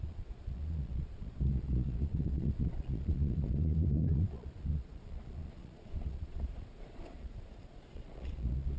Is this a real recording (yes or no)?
no